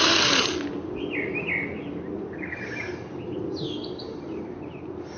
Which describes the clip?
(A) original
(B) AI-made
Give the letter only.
A